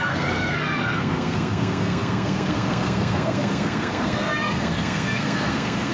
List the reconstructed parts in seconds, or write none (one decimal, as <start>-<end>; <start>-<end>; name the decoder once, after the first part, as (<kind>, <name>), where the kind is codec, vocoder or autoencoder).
0.0-5.9 (codec, SNAC)